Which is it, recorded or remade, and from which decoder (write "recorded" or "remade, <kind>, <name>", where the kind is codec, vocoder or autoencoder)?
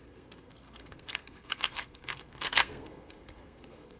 remade, codec, SNAC